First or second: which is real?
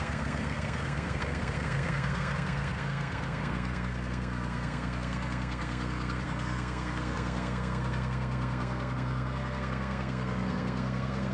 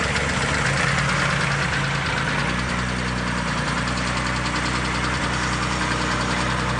second